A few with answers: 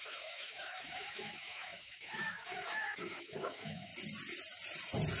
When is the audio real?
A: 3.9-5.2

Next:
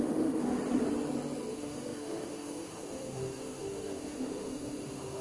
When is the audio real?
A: 0.5-1.5

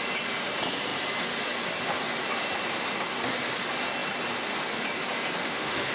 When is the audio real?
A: 0.0-5.4

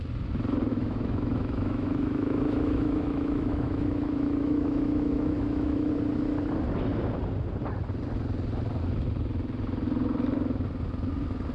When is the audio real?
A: 0.0-0.7; 5.9-11.5

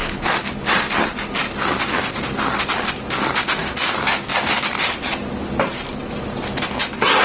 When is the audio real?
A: 0.0-7.2